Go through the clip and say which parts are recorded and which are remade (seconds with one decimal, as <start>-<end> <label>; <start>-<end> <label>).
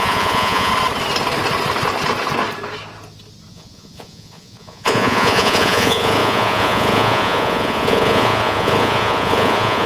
0.0-0.7 remade; 0.7-3.5 recorded; 3.5-9.9 remade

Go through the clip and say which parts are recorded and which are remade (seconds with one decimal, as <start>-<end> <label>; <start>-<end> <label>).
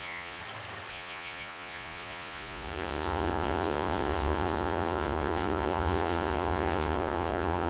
0.0-0.4 remade; 0.4-0.9 recorded; 0.9-7.7 remade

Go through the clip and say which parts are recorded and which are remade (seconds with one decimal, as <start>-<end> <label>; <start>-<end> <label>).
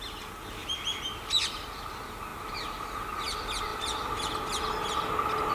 0.0-5.5 recorded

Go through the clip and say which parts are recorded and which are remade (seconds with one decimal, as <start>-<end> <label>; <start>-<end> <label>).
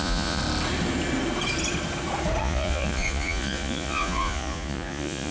0.0-0.4 remade; 0.4-2.4 recorded; 2.4-5.3 remade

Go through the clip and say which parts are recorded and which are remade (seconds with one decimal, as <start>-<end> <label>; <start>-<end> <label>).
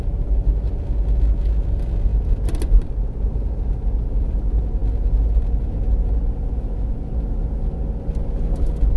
0.0-9.0 recorded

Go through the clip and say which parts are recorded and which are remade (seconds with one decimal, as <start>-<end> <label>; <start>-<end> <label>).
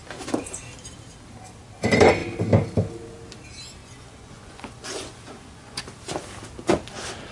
0.0-3.8 recorded; 3.8-5.8 remade; 5.8-7.3 recorded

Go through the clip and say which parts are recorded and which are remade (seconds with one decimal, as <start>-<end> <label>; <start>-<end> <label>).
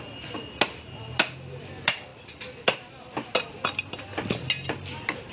0.0-5.3 recorded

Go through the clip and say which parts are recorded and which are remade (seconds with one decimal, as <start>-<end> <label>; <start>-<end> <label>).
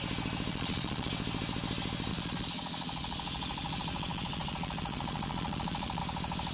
0.0-0.5 recorded; 0.5-1.1 remade; 1.1-2.1 recorded; 2.1-6.0 remade; 6.0-6.5 recorded